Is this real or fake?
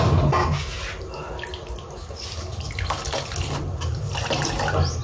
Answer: real